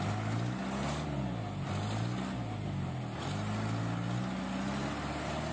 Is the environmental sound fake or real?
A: real